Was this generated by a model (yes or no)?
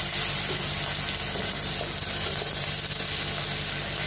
no